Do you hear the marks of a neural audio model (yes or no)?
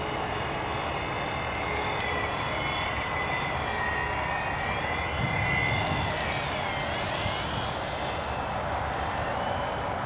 no